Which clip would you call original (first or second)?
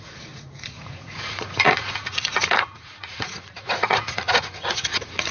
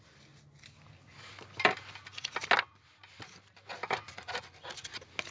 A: second